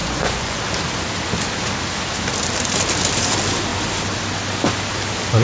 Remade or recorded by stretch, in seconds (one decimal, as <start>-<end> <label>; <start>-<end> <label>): 0.0-0.6 remade; 0.6-5.4 recorded